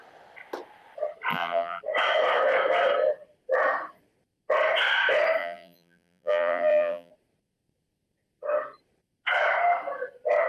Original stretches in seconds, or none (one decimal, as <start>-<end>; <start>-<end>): 0.0-1.3; 1.8-5.4; 7.1-10.5